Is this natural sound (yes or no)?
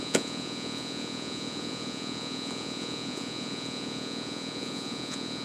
no